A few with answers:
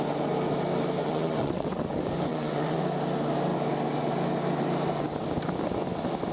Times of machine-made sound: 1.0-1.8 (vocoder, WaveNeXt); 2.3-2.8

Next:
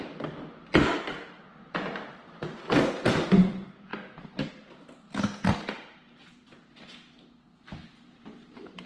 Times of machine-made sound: 0.0-1.5 (vocoder, BigVGAN v2); 3.1-8.9

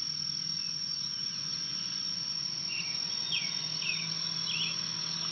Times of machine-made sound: 0.5-3.7 (vocoder, Vocos)